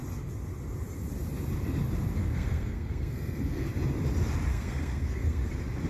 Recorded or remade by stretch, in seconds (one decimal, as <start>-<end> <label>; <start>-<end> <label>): 0.0-2.2 recorded; 2.2-3.7 remade; 3.7-4.5 recorded; 4.5-5.5 remade; 5.5-5.9 recorded